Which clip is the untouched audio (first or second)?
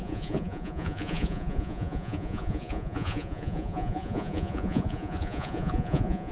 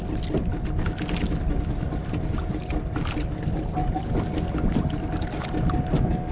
second